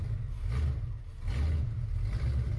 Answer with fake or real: real